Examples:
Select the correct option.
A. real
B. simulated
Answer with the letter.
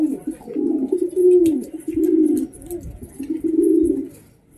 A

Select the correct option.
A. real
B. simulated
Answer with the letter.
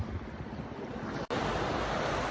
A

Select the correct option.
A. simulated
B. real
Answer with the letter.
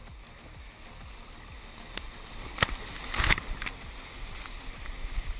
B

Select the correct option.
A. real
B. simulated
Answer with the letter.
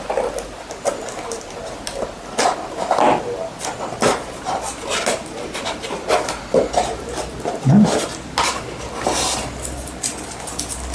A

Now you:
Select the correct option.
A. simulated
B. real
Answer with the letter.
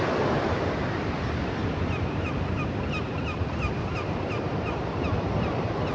A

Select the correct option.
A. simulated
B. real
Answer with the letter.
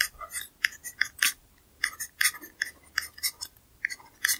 B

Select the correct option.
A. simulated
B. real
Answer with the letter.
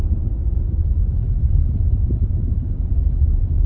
A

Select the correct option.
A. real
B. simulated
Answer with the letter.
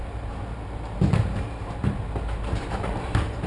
B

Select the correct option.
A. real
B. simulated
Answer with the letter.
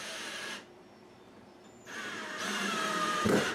B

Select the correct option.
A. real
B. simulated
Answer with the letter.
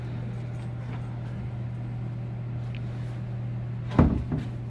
A